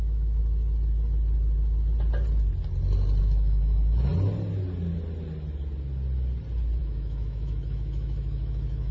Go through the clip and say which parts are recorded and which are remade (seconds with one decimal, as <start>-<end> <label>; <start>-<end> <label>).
0.0-0.4 remade; 0.4-3.2 recorded; 3.2-4.1 remade; 4.1-6.8 recorded; 6.8-8.9 remade